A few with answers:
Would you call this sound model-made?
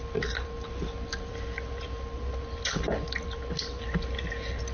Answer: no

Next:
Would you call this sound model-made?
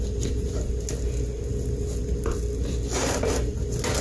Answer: no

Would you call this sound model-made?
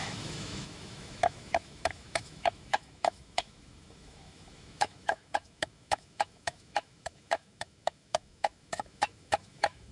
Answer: yes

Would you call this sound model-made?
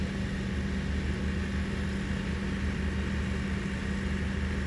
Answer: no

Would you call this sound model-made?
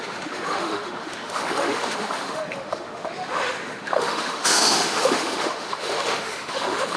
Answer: yes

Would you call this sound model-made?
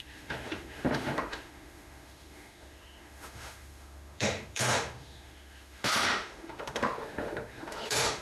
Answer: yes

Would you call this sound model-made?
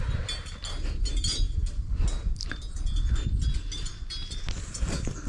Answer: no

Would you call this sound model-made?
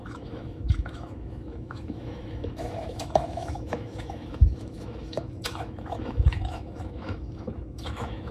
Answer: yes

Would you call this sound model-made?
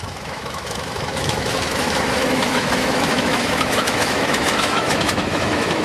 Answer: yes